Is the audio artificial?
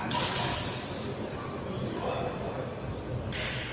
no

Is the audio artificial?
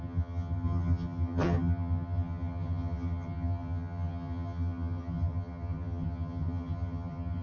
yes